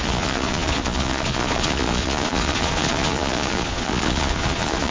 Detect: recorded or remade remade